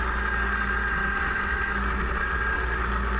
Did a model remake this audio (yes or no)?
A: no